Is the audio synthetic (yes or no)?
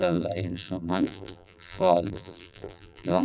yes